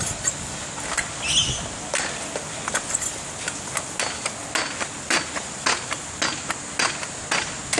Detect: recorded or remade recorded